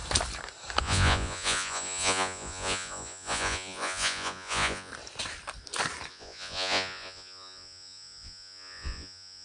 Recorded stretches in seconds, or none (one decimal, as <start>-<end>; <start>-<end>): 0.0-0.8; 4.9-6.1

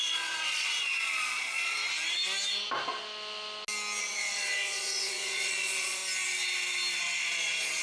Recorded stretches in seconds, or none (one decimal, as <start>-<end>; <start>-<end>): 1.8-4.0; 6.0-7.0